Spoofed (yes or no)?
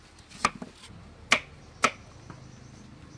no